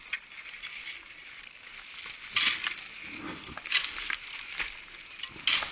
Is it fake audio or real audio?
real